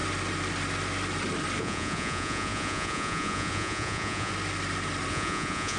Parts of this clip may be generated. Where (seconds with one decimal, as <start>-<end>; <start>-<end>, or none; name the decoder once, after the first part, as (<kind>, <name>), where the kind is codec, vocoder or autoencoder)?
1.6-4.3 (vocoder, Vocos); 5.1-5.8